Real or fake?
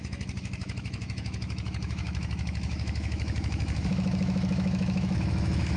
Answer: fake